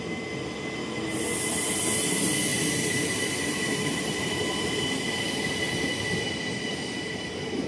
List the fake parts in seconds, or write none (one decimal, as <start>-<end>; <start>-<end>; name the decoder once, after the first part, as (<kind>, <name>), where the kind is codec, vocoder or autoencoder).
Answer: 2.5-5.5 (vocoder, BigVGAN v2); 6.7-7.7